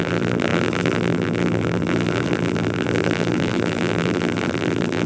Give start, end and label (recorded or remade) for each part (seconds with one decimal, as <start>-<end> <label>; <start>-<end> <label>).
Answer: 0.0-5.1 remade